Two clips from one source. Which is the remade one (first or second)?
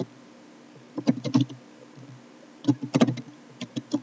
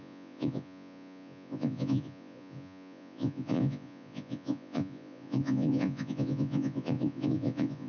second